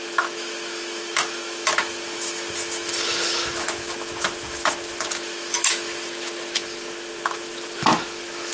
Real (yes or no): no